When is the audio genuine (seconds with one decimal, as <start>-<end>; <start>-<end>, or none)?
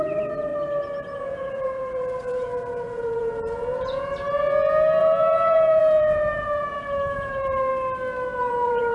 0.5-1.2; 4.1-5.0; 7.7-8.4